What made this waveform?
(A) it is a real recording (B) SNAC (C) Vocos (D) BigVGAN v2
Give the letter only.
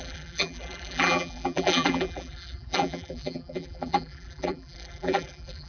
D